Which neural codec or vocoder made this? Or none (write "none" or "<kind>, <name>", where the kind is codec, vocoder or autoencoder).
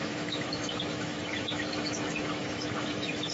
autoencoder, DAC-VAE